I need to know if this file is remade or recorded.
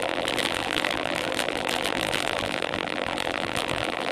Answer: remade